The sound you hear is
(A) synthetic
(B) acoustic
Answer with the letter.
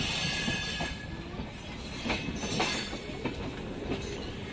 B